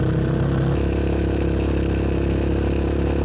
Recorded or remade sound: recorded